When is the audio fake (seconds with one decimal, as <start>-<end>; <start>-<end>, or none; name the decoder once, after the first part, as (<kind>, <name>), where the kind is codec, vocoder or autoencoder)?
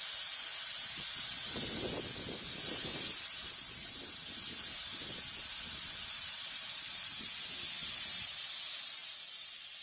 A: none